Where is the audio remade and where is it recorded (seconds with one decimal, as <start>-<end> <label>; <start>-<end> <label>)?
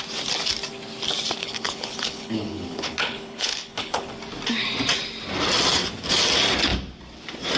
0.0-1.4 recorded; 1.4-4.1 remade; 4.1-7.6 recorded